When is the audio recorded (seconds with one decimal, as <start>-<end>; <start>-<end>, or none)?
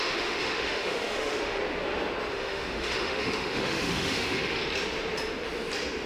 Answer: 1.6-2.3; 4.6-6.1